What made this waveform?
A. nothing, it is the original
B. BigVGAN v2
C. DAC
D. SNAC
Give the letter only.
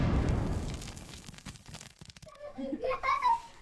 C